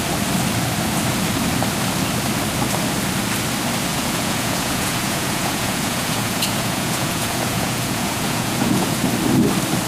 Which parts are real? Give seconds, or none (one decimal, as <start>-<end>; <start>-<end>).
0.0-3.9; 9.0-9.9